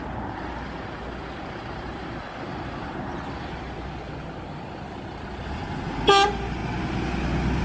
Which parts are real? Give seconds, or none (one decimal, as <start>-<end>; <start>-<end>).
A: 0.0-1.2; 5.8-7.6